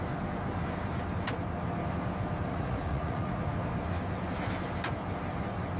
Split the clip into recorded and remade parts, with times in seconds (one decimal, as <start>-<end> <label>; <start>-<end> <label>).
0.0-2.5 recorded; 2.5-3.4 remade; 3.4-5.8 recorded